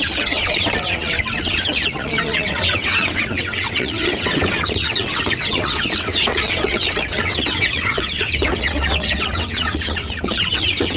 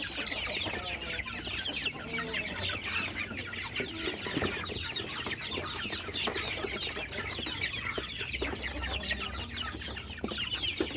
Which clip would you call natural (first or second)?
second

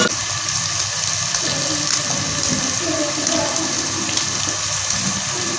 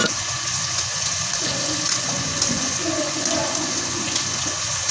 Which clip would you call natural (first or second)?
first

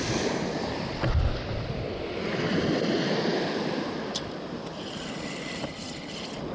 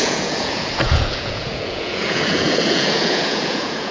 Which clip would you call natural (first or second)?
first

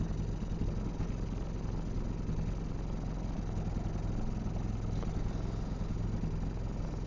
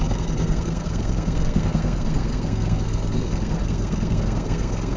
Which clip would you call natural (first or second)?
first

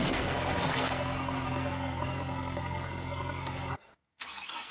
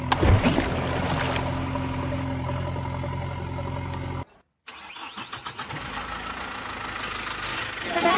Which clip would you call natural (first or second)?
second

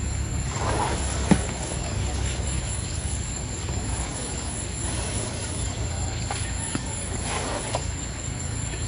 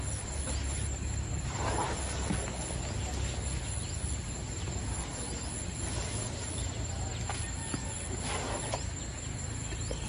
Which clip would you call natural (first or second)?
second